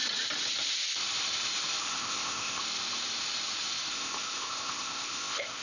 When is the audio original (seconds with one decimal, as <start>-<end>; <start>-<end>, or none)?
0.0-1.8; 2.6-3.9